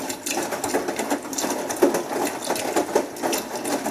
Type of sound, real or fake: real